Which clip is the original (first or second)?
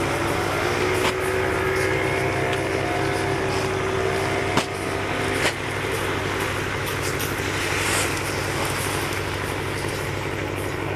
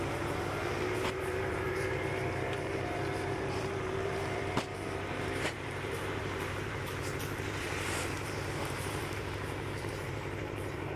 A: first